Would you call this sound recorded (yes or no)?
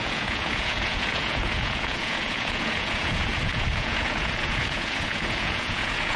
no